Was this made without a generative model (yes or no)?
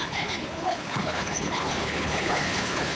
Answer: no